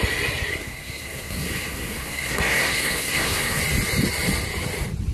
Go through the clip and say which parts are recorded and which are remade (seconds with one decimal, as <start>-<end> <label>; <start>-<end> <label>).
0.0-0.5 recorded; 0.5-3.6 remade; 3.6-5.1 recorded